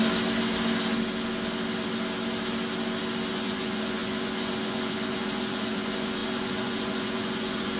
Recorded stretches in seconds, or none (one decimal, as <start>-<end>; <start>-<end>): 0.0-3.3